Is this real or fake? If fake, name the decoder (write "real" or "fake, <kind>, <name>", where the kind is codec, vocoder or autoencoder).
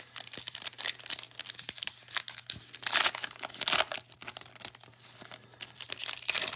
real